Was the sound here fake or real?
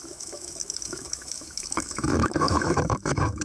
fake